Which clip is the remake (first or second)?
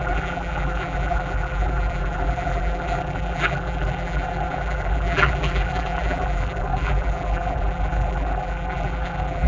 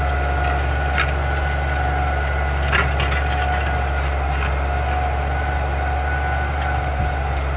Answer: first